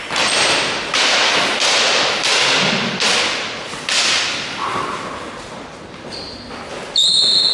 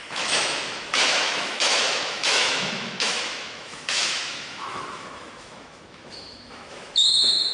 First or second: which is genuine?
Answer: first